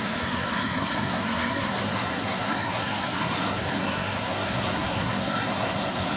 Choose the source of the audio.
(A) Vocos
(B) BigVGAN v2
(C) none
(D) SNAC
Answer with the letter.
D